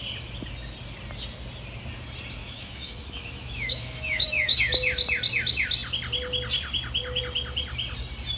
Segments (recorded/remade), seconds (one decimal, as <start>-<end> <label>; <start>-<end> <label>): 0.0-2.4 recorded; 2.4-4.6 remade; 4.6-8.4 recorded